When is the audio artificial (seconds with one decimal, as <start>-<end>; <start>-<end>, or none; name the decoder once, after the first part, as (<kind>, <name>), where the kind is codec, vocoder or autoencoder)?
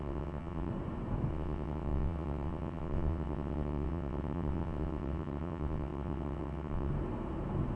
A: 0.0-0.7 (vocoder, WaveNeXt); 1.3-6.9